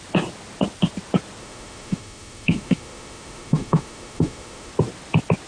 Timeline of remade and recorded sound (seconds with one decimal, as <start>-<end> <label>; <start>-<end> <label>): 0.0-1.4 recorded; 1.4-4.7 remade; 4.7-5.5 recorded